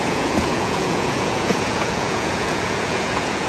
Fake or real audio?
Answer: fake